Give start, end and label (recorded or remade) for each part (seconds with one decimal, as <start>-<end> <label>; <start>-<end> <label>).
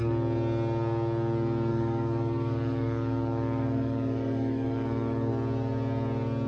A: 0.0-1.7 recorded; 1.7-5.3 remade; 5.3-6.5 recorded